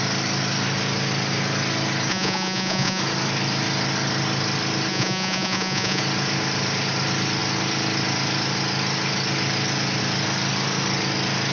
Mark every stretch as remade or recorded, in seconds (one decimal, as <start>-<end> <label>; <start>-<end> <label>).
0.0-2.1 recorded; 2.1-3.0 remade; 3.0-4.9 recorded; 4.9-6.0 remade; 6.0-11.5 recorded